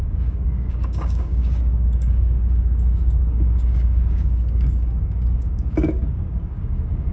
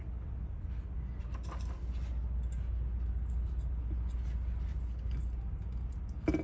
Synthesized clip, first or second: first